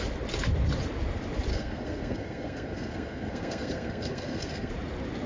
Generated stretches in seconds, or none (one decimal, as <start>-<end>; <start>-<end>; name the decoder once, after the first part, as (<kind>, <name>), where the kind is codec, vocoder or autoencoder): 1.5-4.7 (codec, SNAC)